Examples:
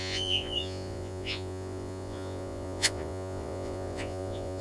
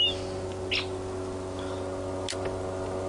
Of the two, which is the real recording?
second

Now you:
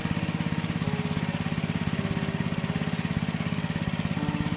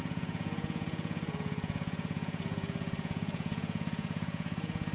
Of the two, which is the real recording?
first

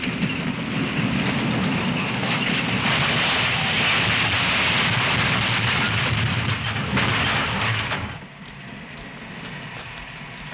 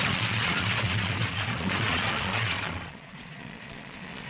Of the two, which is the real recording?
first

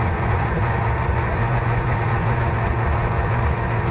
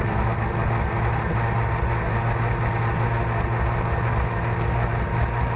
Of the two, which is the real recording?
second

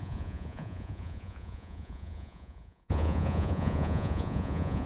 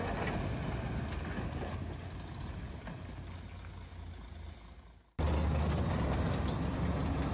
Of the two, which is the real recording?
second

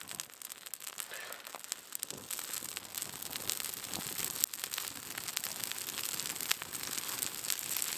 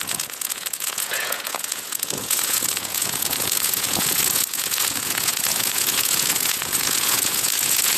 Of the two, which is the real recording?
first